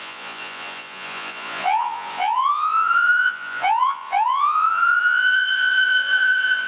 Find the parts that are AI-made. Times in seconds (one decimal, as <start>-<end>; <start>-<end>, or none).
0.0-6.7